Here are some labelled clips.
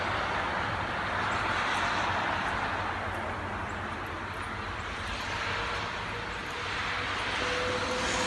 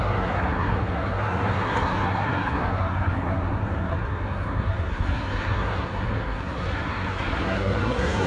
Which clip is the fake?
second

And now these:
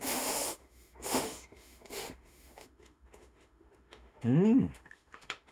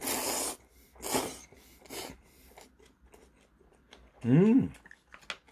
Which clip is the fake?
first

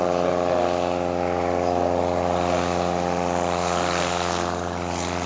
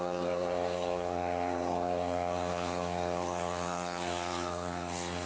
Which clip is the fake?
second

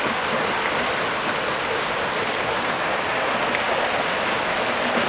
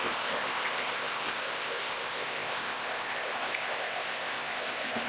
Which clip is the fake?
second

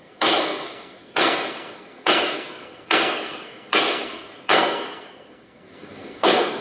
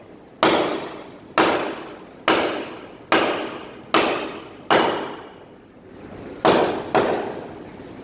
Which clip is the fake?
first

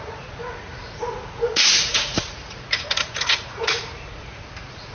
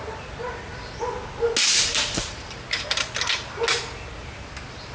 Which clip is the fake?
first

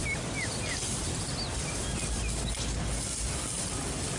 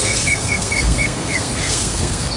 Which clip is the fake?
second